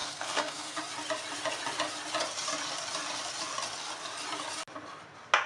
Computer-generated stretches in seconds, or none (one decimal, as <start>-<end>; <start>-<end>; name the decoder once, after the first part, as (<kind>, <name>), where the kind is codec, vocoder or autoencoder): 0.0-0.8 (codec, SNAC)